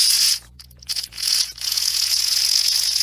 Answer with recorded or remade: remade